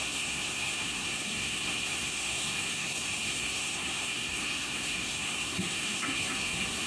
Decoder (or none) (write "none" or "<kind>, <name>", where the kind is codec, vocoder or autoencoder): codec, SNAC